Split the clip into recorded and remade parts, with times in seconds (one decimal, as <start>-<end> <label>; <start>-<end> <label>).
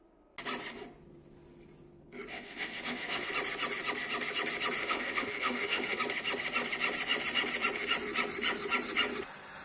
0.0-2.3 recorded; 2.3-3.3 remade; 3.3-4.8 recorded; 4.8-6.0 remade; 6.0-9.6 recorded